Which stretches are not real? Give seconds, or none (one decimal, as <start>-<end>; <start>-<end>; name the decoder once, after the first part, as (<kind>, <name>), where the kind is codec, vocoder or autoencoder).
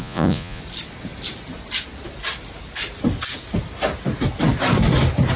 0.0-0.6 (vocoder, Vocos)